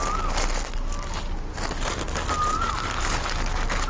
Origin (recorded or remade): recorded